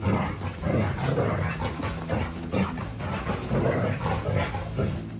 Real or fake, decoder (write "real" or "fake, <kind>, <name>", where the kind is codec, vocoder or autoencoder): real